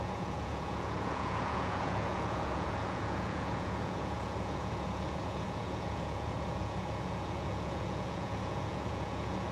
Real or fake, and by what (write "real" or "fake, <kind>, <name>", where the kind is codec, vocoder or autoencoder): fake, vocoder, Vocos